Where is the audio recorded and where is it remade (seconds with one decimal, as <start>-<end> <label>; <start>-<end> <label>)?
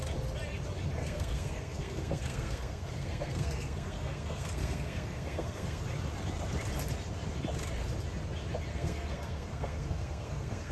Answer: 0.0-1.0 recorded; 1.0-5.8 remade; 5.8-8.7 recorded; 8.7-10.7 remade